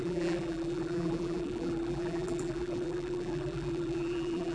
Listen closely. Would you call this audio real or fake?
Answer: fake